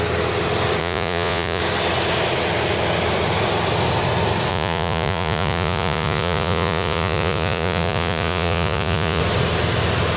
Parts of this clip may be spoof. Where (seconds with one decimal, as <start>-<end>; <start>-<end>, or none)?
0.8-1.6; 4.5-9.2